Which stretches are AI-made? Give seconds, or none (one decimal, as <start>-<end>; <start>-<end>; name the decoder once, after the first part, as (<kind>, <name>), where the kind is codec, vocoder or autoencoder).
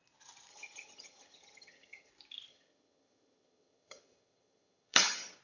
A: 0.5-2.1 (vocoder, HiFi-GAN); 2.5-5.4